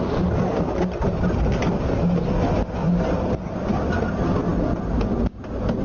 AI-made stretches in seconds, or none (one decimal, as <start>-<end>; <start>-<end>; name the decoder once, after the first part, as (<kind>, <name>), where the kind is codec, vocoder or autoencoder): none